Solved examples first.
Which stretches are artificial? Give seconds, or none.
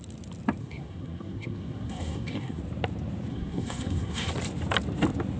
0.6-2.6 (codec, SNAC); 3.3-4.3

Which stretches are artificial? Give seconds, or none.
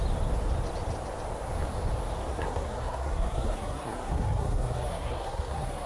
2.3-5.9 (codec, SNAC)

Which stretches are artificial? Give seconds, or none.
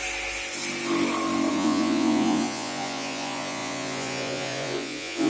1.5-5.3 (vocoder, Vocos)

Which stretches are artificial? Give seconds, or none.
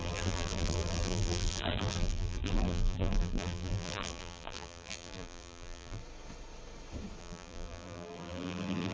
0.0-6.0 (vocoder, BigVGAN v2); 7.2-8.9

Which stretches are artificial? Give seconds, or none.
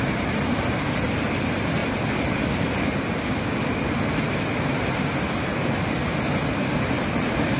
none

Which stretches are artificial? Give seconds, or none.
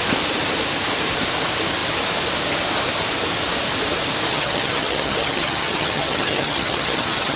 4.3-7.4 (vocoder, HiFi-GAN)